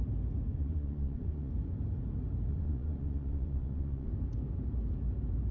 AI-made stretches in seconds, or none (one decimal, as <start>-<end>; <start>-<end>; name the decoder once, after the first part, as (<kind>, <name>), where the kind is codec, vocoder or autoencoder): 0.5-1.5 (vocoder, Vocos); 2.5-4.1